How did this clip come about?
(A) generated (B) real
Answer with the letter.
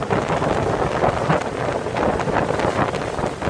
B